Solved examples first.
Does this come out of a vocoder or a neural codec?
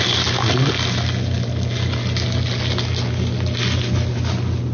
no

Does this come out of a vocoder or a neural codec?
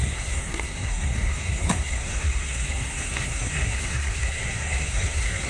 yes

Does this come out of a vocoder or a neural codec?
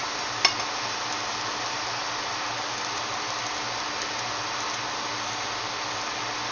no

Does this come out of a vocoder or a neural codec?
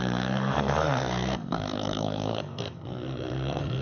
yes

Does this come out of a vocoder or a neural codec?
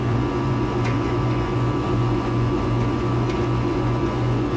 yes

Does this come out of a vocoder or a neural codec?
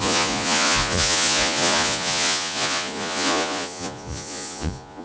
yes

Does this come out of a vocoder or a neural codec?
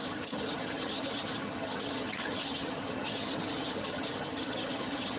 yes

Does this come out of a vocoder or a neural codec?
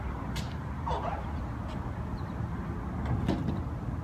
no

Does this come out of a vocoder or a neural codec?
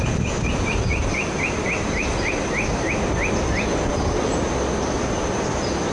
no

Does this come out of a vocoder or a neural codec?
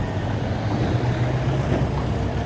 no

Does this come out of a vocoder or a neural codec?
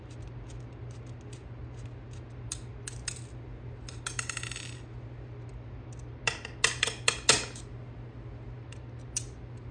no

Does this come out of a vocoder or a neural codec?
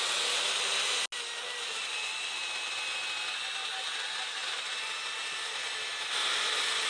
no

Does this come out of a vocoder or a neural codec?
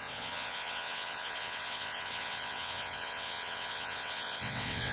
yes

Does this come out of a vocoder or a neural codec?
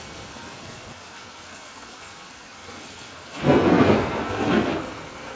yes